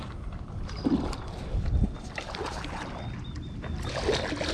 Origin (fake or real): real